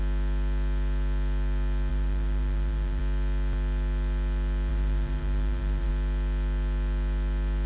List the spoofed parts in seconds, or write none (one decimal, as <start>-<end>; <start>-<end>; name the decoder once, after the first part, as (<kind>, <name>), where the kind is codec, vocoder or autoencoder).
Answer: 1.9-3.0 (vocoder, BigVGAN v2); 4.7-5.9